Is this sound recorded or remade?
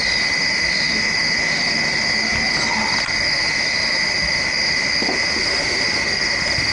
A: recorded